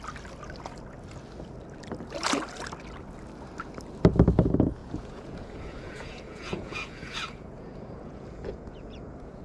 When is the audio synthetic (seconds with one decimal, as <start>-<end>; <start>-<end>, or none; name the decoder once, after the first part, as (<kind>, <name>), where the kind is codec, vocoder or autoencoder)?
4.8-9.4 (vocoder, Vocos)